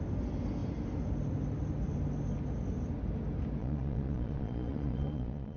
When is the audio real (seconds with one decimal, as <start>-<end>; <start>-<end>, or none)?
0.0-3.6

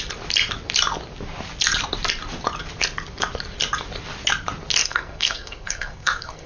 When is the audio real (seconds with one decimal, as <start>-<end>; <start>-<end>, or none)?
0.0-4.8

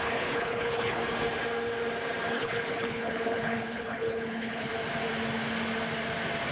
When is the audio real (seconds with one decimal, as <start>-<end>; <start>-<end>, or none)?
1.0-2.3; 4.7-6.5